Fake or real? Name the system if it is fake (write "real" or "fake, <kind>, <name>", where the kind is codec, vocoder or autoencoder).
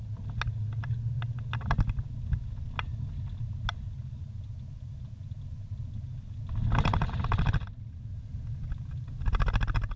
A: real